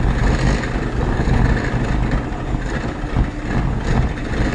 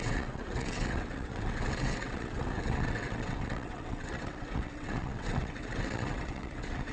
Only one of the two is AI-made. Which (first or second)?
second